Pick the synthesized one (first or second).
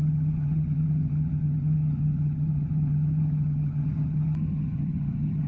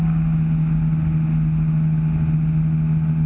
first